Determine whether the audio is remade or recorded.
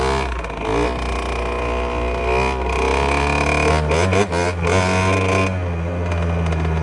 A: recorded